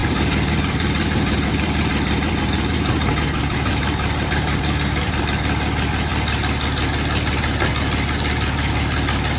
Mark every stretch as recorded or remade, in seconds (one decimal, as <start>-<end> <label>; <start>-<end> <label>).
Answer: 0.0-5.2 remade; 5.2-9.4 recorded